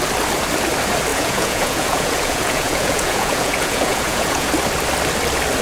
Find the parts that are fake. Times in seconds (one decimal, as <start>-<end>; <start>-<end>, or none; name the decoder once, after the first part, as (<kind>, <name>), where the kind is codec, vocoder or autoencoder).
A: 1.1-4.5 (vocoder, Vocos)